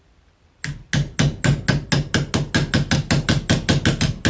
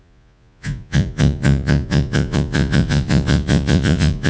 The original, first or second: first